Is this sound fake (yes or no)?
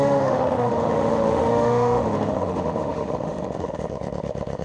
yes